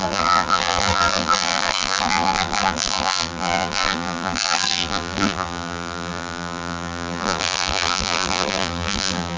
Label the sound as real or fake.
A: fake